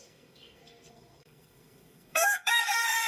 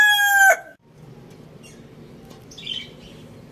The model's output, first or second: first